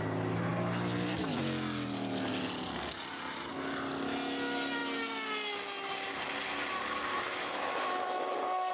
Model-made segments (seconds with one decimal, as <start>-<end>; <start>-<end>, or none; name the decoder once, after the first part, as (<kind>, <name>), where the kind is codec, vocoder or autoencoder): 7.1-8.7 (autoencoder, DAC-VAE)